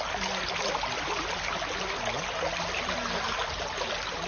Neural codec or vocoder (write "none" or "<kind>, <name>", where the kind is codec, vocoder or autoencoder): none